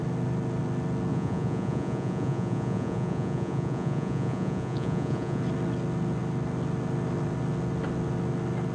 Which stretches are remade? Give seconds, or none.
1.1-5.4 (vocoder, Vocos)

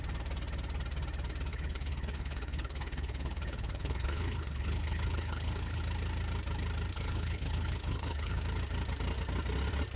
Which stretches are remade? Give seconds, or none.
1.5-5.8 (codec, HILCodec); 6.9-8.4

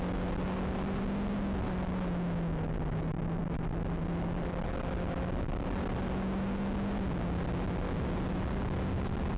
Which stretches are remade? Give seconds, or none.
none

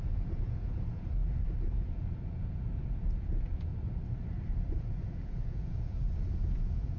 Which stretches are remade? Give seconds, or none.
0.0-1.2 (vocoder, Vocos); 1.8-3.7; 4.8-7.0

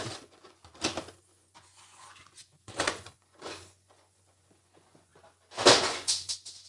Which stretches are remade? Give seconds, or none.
0.0-0.6 (vocoder, Vocos); 1.1-5.1; 5.8-6.7